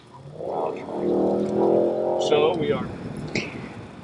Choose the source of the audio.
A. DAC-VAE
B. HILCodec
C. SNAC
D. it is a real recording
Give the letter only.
D